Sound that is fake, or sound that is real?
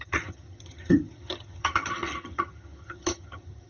fake